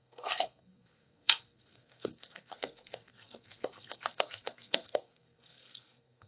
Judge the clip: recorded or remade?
remade